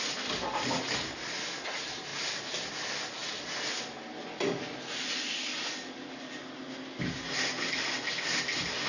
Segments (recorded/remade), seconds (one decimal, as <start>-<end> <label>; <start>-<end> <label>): 0.0-8.9 recorded